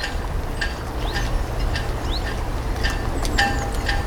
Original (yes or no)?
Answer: yes